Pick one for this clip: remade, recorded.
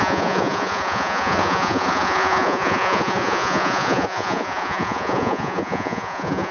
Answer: remade